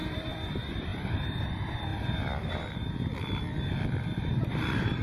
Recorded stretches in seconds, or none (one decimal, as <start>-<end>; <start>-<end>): 0.9-1.5; 1.9-2.5